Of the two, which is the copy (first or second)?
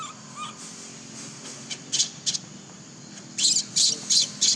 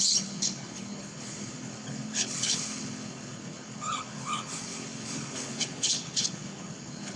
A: second